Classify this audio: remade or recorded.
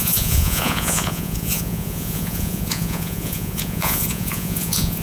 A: remade